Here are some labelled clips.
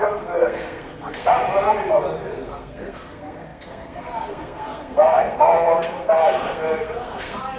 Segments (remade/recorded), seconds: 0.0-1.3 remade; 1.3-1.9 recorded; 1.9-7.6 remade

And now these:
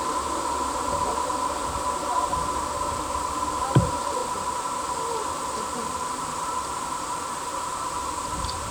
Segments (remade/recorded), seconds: 0.0-8.7 remade

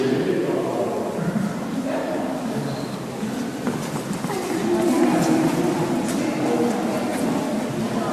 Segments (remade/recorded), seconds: 0.0-2.0 recorded; 2.0-3.2 remade; 3.2-8.1 recorded